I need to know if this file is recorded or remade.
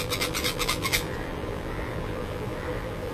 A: remade